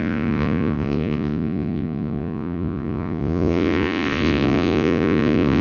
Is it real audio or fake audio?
fake